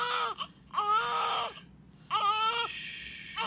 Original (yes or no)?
yes